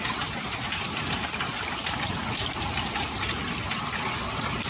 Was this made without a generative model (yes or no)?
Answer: yes